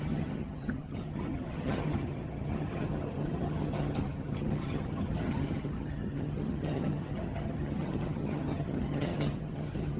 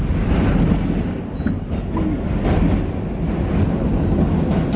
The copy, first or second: first